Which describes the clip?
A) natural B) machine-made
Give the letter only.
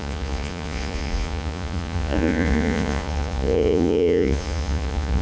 B